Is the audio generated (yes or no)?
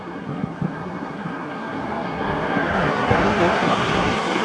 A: yes